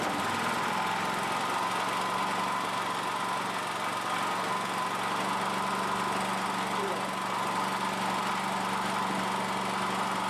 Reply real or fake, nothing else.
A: real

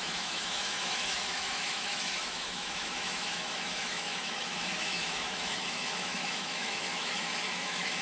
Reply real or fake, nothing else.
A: fake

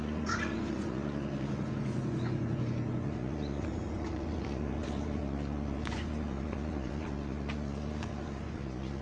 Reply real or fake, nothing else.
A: fake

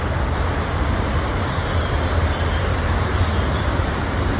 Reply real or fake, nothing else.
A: real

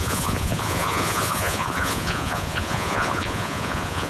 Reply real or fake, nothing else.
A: fake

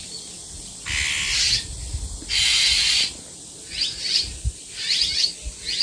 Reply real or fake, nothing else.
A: real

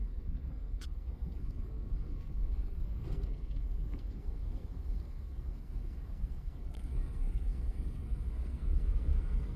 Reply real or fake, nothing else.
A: fake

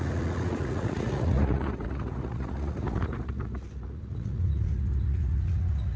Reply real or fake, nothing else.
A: fake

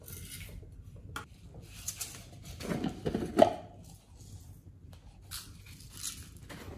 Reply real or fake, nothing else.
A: real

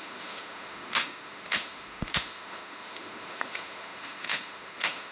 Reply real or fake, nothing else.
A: fake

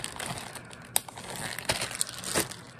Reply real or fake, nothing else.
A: real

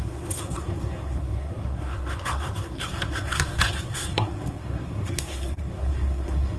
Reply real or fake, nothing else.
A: fake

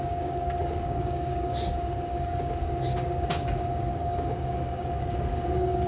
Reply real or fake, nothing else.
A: fake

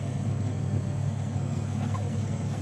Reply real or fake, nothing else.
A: fake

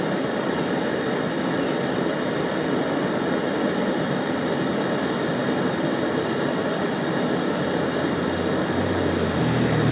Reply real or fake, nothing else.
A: real